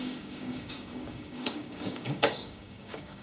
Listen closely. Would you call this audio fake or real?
fake